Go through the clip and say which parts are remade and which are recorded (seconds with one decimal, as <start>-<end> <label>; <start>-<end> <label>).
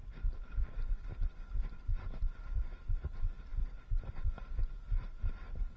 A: 0.0-5.8 recorded